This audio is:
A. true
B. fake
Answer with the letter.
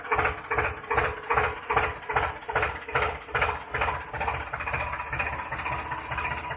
A